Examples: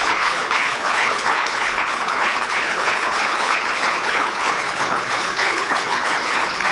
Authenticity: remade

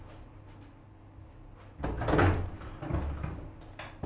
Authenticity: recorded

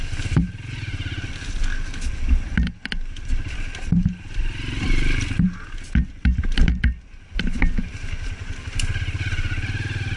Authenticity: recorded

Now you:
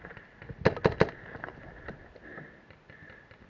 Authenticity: recorded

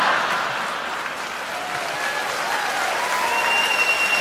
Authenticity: recorded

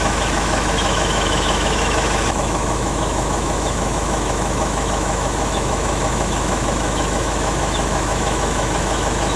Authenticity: remade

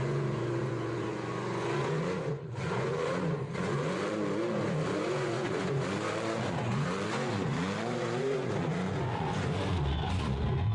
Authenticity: remade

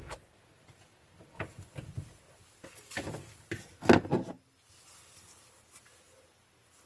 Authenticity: recorded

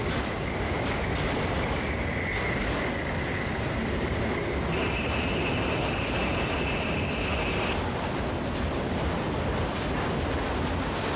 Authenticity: recorded